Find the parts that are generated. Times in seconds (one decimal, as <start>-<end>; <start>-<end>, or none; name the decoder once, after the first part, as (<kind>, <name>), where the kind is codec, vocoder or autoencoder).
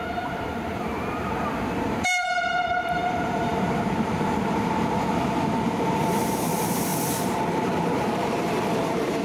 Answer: 0.0-9.2 (vocoder, BigVGAN v2)